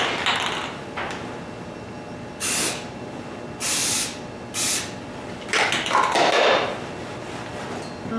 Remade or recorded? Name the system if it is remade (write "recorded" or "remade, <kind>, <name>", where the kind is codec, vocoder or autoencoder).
recorded